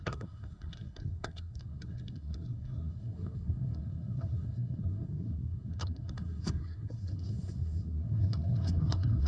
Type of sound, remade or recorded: remade